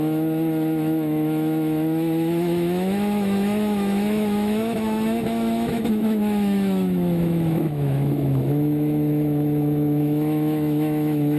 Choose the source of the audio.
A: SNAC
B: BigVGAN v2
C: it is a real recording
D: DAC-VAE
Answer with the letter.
D